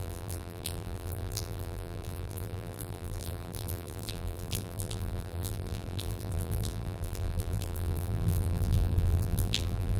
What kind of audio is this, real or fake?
fake